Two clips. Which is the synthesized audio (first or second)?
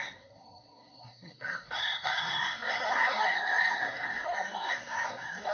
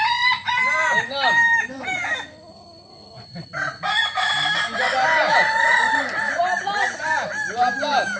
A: first